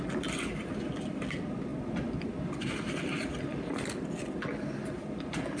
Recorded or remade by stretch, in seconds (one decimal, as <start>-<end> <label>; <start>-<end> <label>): 0.0-5.6 recorded